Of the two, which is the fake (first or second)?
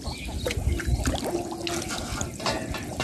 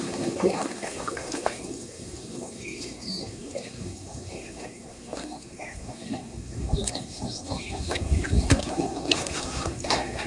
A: second